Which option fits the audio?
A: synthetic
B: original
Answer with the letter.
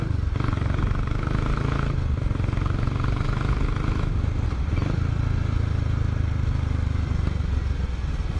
B